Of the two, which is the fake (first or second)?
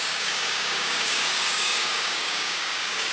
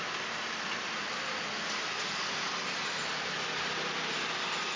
first